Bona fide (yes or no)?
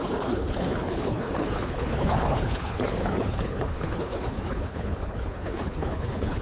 no